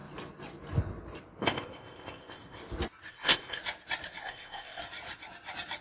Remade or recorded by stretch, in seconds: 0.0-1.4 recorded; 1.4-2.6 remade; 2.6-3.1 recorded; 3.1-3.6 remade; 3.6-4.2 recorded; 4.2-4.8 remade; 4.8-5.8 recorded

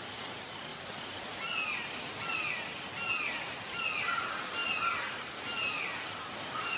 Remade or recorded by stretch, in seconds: 0.0-6.8 recorded